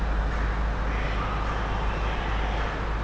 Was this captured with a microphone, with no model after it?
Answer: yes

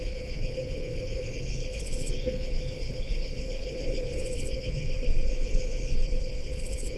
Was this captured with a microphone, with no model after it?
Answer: no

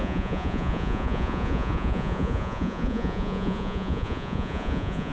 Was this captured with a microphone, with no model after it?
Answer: no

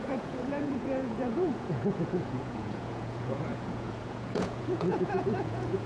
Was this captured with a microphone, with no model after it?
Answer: no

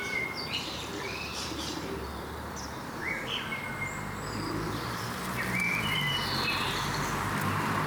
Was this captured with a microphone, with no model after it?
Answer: no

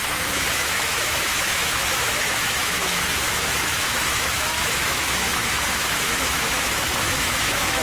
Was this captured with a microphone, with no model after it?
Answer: no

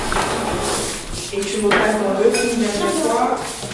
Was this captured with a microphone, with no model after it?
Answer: yes